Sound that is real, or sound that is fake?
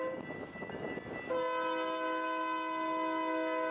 real